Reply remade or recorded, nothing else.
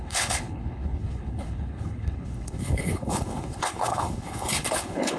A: remade